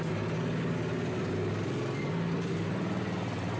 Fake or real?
real